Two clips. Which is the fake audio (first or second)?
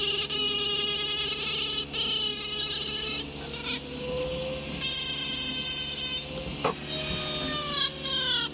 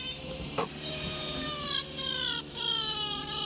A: second